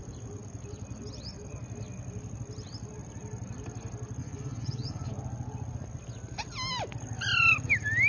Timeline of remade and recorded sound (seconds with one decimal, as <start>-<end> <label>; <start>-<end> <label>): 0.0-4.2 recorded; 4.2-5.1 remade; 5.1-8.1 recorded